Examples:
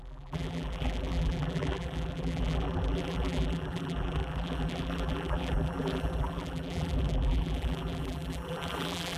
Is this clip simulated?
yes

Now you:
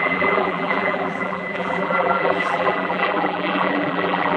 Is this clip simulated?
yes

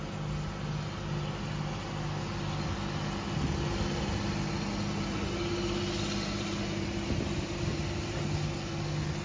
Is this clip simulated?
no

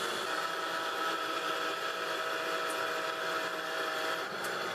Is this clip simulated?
no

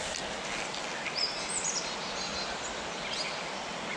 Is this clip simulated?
yes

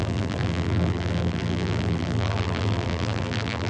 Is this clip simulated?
yes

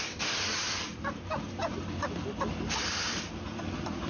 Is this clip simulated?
yes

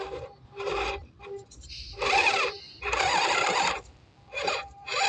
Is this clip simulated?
yes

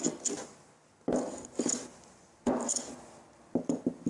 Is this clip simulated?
no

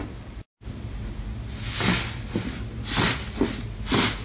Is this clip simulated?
no